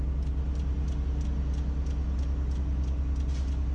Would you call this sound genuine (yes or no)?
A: yes